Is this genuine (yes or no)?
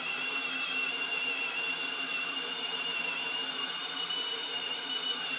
no